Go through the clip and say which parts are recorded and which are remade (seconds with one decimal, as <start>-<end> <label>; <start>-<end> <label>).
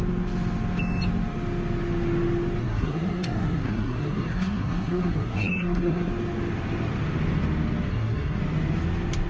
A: 0.0-2.6 recorded; 2.6-6.1 remade; 6.1-7.9 recorded; 7.9-8.4 remade; 8.4-9.3 recorded